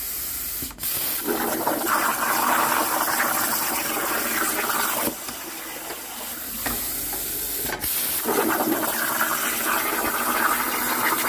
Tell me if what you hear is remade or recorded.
recorded